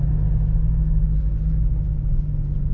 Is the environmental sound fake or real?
real